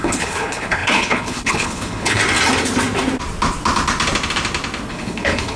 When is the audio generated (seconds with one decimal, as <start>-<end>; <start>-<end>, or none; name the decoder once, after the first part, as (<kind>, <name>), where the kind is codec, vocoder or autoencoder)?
0.0-2.2 (codec, HILCodec); 4.9-5.6